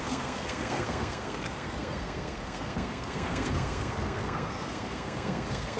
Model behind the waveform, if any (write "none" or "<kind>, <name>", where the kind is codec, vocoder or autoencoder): codec, SNAC